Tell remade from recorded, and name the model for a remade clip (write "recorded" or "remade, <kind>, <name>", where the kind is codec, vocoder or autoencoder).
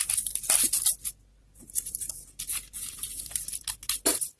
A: recorded